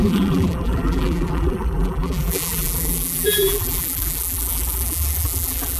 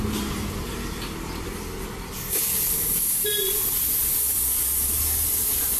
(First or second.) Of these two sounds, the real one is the second